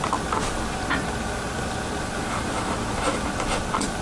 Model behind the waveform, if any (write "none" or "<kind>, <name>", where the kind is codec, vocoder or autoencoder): none